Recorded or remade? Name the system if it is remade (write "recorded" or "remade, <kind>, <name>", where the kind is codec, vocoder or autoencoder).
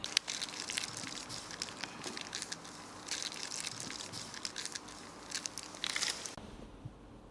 recorded